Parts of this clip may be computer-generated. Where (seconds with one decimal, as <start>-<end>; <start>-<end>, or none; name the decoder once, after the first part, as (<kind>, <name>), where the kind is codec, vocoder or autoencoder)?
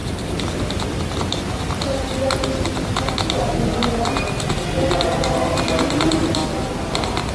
none